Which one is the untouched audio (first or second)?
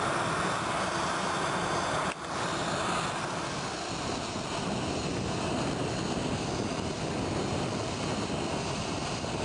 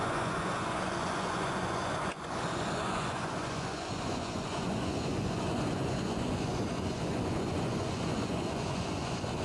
first